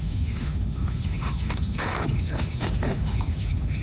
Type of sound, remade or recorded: remade